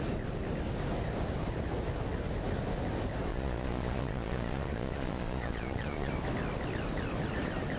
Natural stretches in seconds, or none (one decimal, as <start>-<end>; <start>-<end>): 0.0-3.3; 6.1-7.8